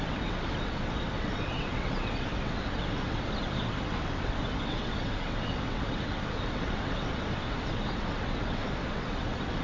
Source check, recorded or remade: remade